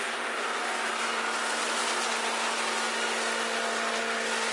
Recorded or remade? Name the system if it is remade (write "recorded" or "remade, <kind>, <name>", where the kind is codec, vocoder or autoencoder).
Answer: recorded